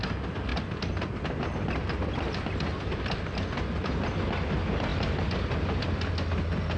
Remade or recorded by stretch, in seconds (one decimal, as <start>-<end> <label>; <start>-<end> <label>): 0.0-0.5 recorded; 0.5-1.1 remade; 1.1-1.8 recorded; 1.8-2.8 remade; 2.8-4.9 recorded; 4.9-6.1 remade; 6.1-6.8 recorded

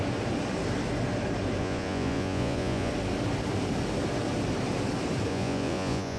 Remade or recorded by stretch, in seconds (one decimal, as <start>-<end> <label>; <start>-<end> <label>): 0.0-1.6 recorded; 1.6-2.9 remade; 2.9-5.3 recorded; 5.3-6.2 remade

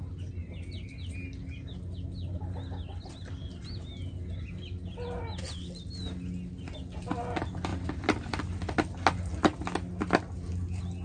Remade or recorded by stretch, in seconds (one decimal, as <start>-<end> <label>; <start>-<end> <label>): 0.0-11.0 recorded

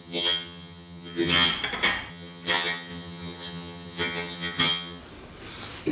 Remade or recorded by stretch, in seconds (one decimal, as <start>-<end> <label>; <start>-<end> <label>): 0.0-1.5 remade; 1.5-2.1 recorded; 2.1-5.0 remade; 5.0-5.9 recorded

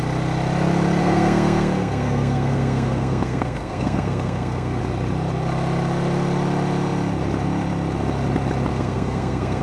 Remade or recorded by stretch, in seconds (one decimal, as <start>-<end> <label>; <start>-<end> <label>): 0.0-1.0 recorded; 1.0-4.8 remade; 4.8-8.7 recorded; 8.7-9.6 remade

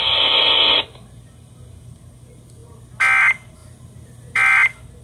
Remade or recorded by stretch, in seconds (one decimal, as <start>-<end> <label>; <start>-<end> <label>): 0.0-5.0 recorded

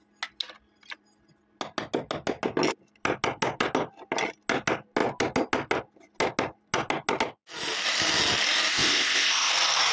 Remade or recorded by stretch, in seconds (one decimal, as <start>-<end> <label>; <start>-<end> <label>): 0.0-8.7 recorded; 8.7-9.5 remade; 9.5-9.9 recorded